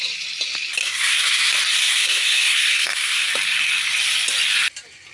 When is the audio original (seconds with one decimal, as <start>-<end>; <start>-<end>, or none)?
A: 0.0-0.8; 1.5-1.9; 3.3-5.1